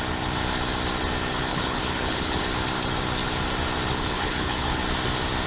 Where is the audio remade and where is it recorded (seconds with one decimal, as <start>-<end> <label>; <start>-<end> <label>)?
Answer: 0.0-1.5 recorded; 1.5-2.4 remade; 2.4-3.9 recorded; 3.9-4.8 remade; 4.8-5.5 recorded